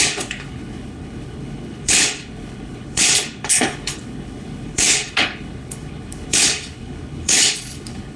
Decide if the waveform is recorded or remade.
remade